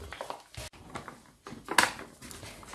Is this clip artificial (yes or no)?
no